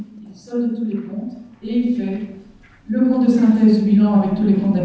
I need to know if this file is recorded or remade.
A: recorded